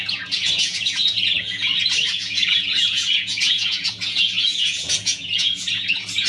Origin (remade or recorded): remade